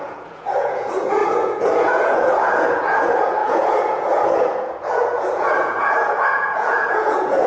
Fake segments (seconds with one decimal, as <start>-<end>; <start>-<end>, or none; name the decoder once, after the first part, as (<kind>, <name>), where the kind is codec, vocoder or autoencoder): 0.0-7.5 (vocoder, Vocos)